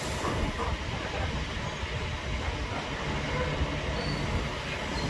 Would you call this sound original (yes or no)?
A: yes